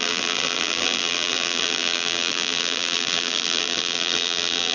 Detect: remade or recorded remade